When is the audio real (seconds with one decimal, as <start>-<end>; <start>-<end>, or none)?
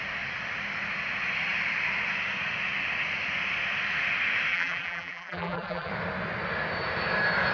0.0-4.5; 5.9-7.5